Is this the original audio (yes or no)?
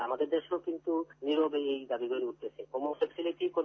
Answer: yes